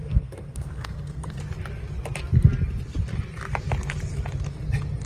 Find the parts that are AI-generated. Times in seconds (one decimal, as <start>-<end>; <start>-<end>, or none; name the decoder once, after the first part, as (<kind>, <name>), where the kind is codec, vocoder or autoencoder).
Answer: 0.0-1.4 (codec, SNAC)